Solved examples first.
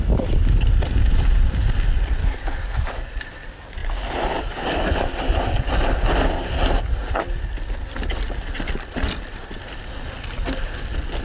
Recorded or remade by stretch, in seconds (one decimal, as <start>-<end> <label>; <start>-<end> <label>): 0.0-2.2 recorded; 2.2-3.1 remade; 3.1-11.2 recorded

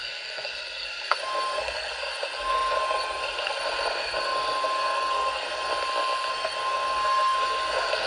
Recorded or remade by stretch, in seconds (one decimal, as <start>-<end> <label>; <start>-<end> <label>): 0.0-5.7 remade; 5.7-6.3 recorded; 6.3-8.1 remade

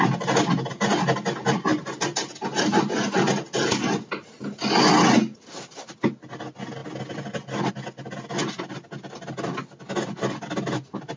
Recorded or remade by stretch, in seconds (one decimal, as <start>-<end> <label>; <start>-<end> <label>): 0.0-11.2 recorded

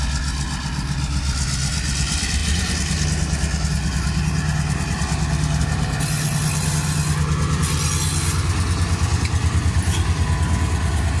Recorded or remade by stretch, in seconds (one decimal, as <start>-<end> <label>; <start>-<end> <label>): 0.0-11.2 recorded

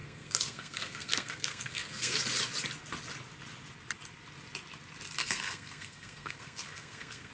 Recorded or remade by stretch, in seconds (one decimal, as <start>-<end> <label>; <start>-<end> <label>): 0.0-2.2 remade; 2.2-5.2 recorded; 5.2-7.3 remade

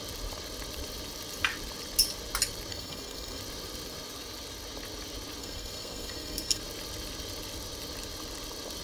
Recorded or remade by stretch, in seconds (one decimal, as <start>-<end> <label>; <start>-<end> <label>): 0.0-2.7 recorded; 2.7-3.4 remade; 3.4-5.4 recorded; 5.4-6.6 remade; 6.6-8.8 recorded

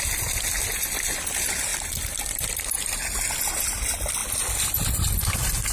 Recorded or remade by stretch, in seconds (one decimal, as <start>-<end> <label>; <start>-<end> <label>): 0.0-5.7 recorded

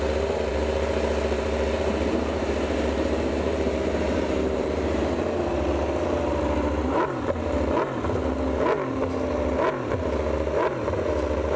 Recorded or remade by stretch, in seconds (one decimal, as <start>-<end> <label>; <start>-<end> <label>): 0.0-0.5 recorded; 0.5-5.5 remade; 5.5-11.6 recorded